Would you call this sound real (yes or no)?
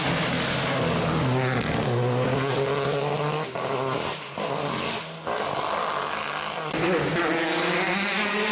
yes